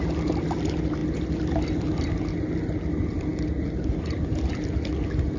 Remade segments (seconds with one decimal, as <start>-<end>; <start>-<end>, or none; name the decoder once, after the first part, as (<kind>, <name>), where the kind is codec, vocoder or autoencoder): none